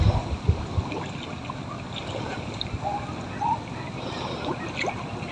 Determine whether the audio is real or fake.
real